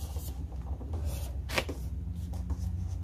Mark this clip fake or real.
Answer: real